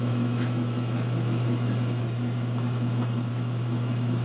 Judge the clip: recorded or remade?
remade